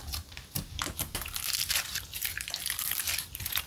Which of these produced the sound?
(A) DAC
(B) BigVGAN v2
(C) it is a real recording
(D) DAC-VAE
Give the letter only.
C